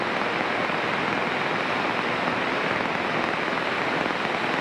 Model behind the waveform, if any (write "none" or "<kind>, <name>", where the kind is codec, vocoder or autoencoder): vocoder, BigVGAN v2